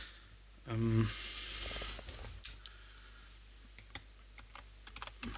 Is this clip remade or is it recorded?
recorded